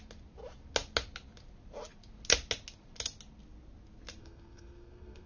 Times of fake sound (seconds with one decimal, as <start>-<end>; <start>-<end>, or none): 4.2-5.3